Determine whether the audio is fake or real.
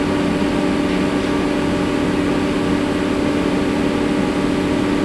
real